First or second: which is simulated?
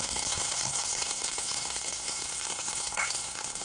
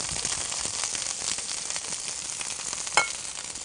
first